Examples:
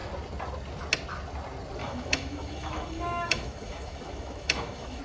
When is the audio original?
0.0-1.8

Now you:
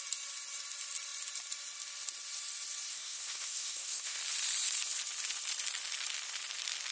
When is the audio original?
0.0-2.9; 4.2-6.9

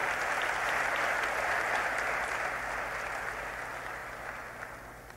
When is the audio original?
0.0-5.2

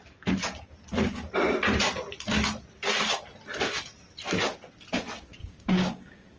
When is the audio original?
0.0-5.4

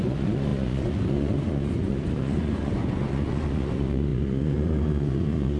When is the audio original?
none

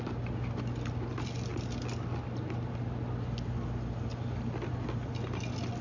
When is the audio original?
0.0-5.8

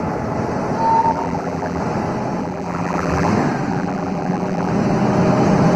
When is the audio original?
0.0-1.0; 1.8-2.4; 3.3-3.7; 4.7-5.8

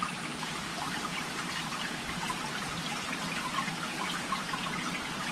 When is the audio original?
none